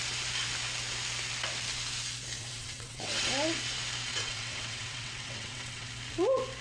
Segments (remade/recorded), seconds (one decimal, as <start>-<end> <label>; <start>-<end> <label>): 0.0-2.4 recorded; 2.4-3.3 remade; 3.3-4.1 recorded; 4.1-5.9 remade; 5.9-6.6 recorded